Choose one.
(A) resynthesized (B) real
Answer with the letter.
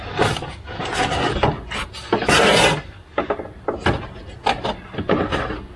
B